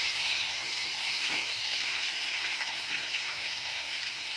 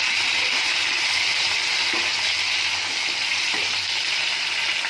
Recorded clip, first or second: second